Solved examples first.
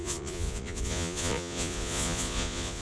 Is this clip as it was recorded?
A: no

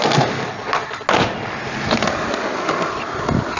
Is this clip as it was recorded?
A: yes